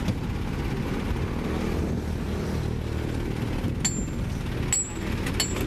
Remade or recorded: recorded